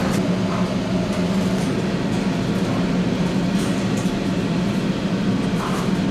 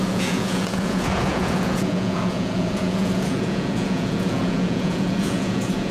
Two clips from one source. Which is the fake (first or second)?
second